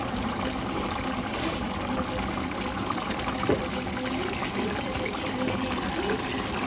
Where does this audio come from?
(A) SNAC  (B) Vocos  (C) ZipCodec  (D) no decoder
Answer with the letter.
D